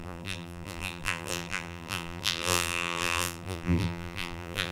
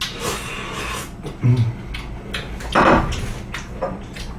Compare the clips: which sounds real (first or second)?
second